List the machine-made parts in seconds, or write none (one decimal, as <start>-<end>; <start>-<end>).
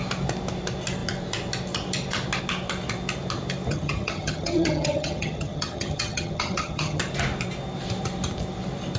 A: 3.7-7.0